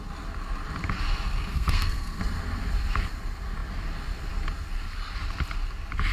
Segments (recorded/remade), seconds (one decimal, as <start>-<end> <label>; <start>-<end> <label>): 0.0-1.5 recorded; 1.5-2.2 remade; 2.2-6.1 recorded